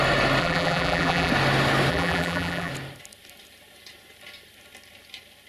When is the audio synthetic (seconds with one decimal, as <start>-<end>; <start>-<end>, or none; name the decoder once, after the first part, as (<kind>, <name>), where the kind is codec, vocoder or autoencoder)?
0.4-1.3 (vocoder, BigVGAN v2); 1.9-2.7